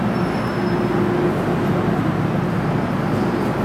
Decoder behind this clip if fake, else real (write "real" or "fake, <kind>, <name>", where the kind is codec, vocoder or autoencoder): real